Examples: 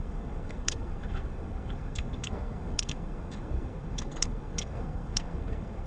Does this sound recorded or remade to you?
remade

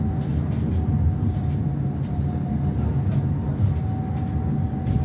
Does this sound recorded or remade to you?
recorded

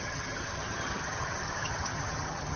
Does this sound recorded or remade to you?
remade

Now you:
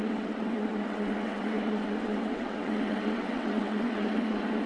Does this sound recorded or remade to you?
remade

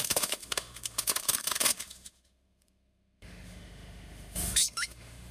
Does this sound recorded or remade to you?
remade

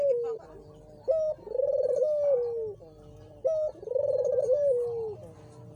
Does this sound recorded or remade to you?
recorded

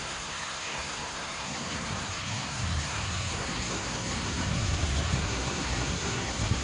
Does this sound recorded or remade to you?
remade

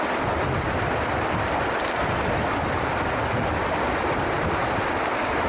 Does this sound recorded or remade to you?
recorded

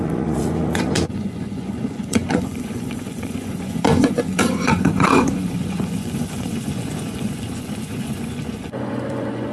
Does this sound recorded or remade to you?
remade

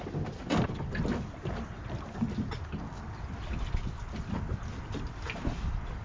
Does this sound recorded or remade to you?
recorded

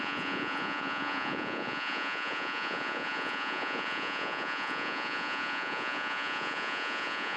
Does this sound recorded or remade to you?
remade